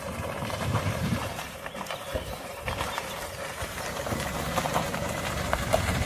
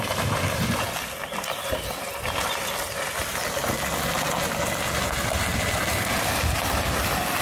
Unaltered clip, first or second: second